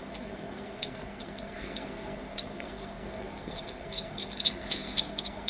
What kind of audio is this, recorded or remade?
remade